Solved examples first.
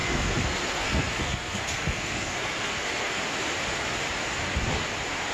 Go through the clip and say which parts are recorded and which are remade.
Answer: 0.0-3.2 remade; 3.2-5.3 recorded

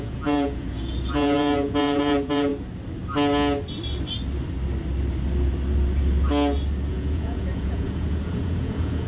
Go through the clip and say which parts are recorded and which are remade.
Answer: 0.0-2.5 remade; 2.5-6.9 recorded; 6.9-9.1 remade

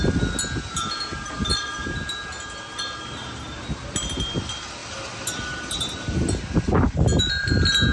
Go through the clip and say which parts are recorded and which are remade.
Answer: 0.0-7.9 recorded